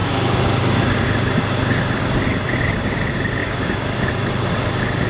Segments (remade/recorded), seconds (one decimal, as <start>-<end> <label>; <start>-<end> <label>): 0.0-0.8 remade; 0.8-3.4 recorded; 3.4-4.0 remade; 4.0-5.1 recorded